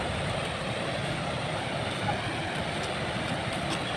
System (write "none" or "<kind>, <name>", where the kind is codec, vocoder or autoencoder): none